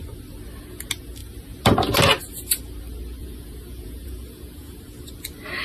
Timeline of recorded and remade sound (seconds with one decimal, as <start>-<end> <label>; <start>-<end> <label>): 0.0-3.2 recorded; 3.2-4.8 remade; 4.8-5.6 recorded

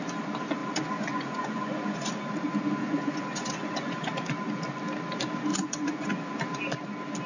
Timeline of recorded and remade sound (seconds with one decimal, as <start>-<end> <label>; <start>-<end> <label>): 0.0-0.6 recorded; 0.6-2.1 remade; 2.1-2.8 recorded; 2.8-4.1 remade; 4.1-5.5 recorded; 5.5-6.3 remade; 6.3-7.3 recorded

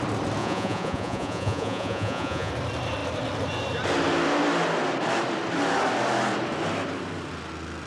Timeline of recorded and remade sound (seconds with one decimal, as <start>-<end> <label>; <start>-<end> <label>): 0.0-0.4 recorded; 0.4-2.5 remade; 2.5-7.9 recorded

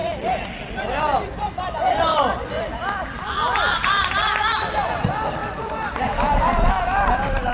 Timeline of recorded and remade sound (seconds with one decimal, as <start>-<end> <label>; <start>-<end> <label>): 0.0-7.5 recorded